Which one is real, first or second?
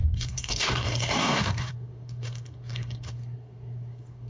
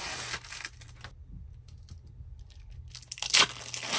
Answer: second